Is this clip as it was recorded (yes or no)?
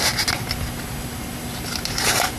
yes